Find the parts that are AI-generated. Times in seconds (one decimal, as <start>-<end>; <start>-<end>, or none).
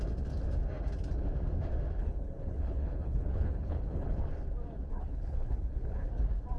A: 2.0-4.2; 4.9-6.1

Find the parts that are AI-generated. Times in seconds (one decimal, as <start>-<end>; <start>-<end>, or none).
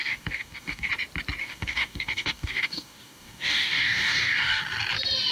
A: 0.0-0.9; 1.4-4.6